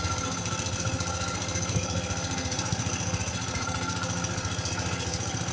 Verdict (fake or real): fake